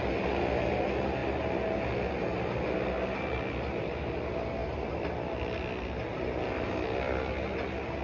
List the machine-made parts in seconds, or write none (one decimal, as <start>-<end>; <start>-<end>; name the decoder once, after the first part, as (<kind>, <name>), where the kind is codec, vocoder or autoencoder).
none